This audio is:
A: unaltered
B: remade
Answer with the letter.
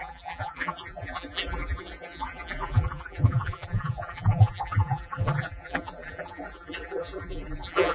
B